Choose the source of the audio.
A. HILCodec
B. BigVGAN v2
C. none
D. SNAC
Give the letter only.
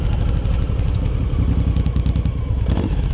C